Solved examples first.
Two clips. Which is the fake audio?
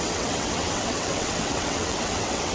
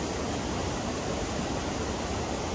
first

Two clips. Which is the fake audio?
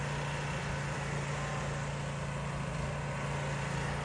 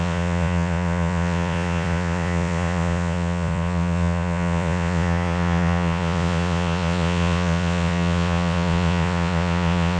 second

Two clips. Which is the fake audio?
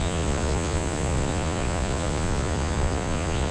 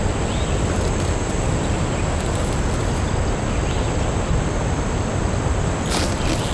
first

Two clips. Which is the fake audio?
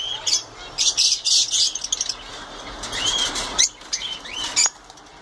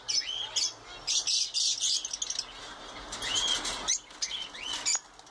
first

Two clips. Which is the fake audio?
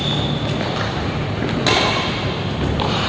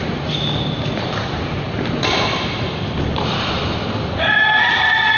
second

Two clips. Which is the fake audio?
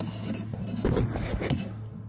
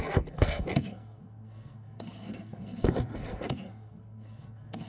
second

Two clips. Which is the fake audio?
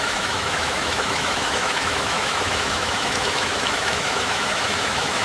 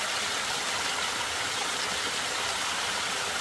first